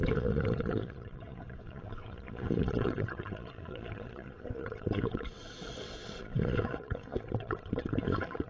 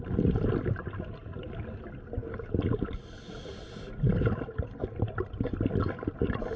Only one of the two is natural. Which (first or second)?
second